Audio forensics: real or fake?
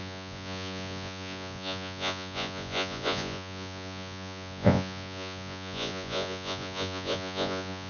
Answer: fake